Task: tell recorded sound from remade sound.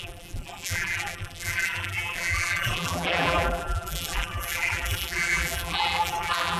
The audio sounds remade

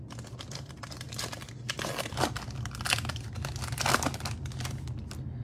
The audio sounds recorded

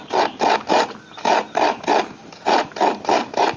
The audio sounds recorded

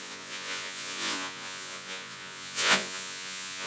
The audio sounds remade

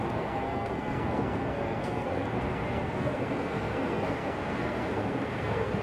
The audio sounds remade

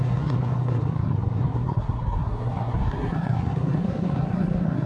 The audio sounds remade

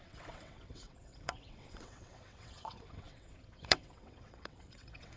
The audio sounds remade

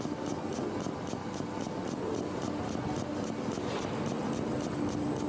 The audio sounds recorded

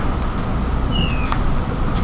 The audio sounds recorded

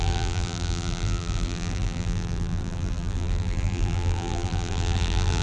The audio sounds remade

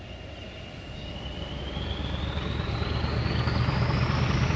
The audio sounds recorded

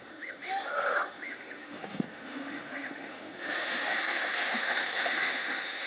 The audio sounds remade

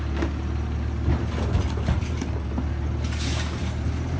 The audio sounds recorded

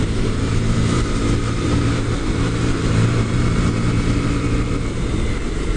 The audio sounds remade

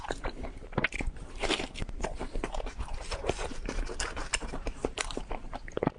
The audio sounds remade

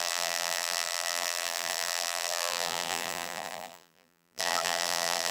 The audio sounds remade